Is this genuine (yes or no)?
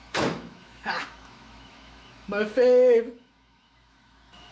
no